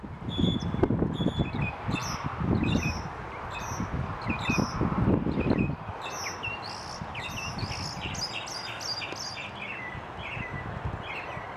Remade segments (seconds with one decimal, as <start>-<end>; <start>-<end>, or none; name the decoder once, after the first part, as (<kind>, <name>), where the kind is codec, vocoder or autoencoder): none